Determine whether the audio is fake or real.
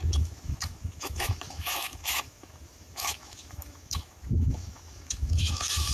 fake